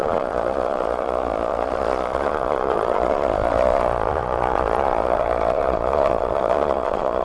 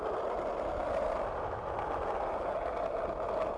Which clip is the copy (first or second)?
first